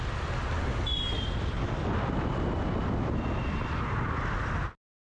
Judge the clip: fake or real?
real